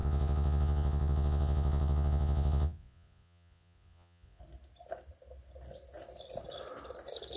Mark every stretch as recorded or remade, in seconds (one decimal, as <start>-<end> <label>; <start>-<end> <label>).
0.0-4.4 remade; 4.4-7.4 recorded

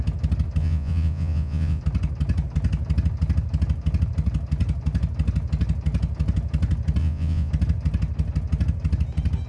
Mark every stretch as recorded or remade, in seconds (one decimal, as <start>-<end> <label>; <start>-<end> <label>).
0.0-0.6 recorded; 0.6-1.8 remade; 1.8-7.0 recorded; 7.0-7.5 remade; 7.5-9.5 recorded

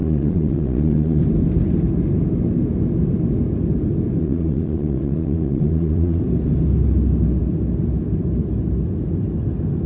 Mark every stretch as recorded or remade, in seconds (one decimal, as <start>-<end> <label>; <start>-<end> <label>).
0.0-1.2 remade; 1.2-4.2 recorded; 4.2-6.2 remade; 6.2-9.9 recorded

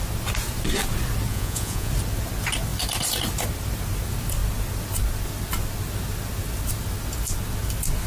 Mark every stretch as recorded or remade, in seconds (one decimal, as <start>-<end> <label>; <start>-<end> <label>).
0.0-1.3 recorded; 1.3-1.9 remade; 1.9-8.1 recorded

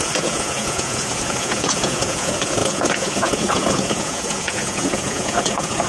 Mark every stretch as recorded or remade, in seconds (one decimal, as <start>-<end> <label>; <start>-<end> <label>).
0.0-5.9 remade